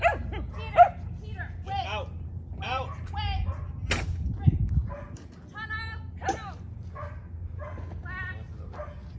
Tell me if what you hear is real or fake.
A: real